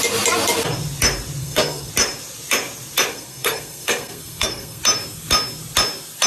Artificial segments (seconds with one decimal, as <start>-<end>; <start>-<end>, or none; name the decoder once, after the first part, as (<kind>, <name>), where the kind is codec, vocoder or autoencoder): 1.4-1.9 (codec, SNAC); 3.1-4.8